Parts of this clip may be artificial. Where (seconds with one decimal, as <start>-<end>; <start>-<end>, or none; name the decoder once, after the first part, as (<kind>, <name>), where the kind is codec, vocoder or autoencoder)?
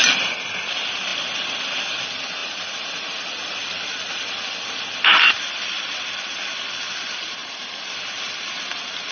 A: none